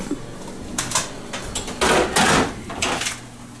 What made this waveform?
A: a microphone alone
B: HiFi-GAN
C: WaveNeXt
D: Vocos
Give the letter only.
A